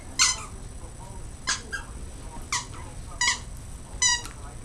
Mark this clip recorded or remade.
recorded